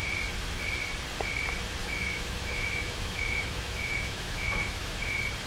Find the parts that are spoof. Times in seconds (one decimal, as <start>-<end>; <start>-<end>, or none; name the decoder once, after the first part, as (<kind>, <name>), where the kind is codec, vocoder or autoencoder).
1.8-5.1 (autoencoder, DAC-VAE)

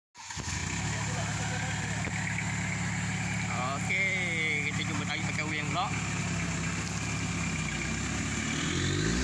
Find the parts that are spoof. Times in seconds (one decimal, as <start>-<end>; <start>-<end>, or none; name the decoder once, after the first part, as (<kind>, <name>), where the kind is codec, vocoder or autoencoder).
none

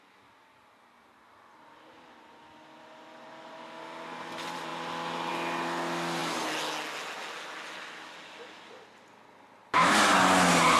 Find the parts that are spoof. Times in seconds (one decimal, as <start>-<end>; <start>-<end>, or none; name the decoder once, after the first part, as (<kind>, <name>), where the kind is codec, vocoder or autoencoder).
none

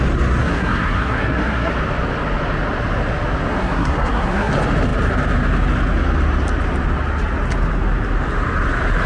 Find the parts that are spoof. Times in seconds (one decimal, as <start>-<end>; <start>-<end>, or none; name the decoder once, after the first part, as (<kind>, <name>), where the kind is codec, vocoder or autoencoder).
0.4-1.7 (codec, SNAC); 3.5-4.5

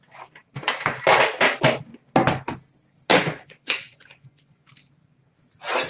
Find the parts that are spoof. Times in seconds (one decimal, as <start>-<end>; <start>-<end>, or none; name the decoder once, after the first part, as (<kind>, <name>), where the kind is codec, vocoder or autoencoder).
3.1-4.7 (vocoder, Vocos)

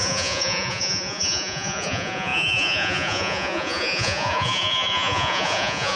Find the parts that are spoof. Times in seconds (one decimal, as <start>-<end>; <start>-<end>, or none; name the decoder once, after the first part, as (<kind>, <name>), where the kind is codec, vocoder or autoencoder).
0.0-6.0 (vocoder, Vocos)

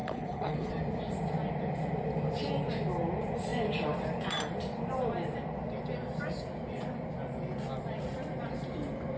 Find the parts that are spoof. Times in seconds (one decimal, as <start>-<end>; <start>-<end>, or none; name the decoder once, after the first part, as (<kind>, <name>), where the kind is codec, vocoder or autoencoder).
0.0-0.7 (codec, HILCodec)